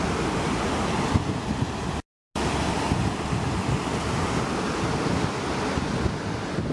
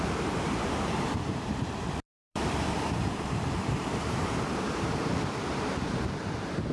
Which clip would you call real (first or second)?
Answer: first